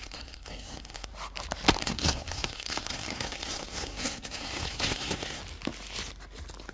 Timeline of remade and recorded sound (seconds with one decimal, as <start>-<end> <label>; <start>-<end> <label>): 0.0-1.1 remade; 1.1-1.8 recorded; 1.8-5.4 remade; 5.4-6.7 recorded